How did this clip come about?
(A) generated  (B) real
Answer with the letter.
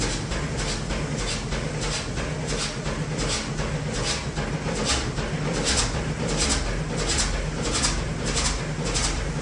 B